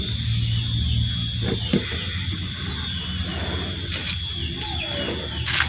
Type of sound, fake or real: real